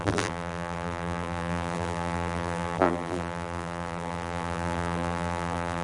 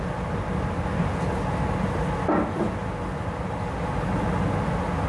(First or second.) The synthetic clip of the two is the first